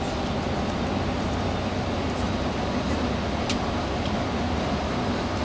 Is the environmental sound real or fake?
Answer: real